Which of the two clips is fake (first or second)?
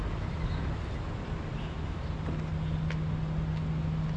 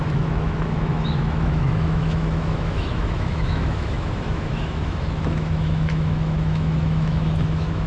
second